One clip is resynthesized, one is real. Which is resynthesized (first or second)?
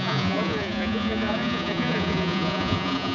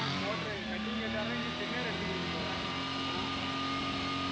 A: first